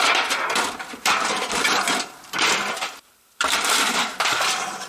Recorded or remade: remade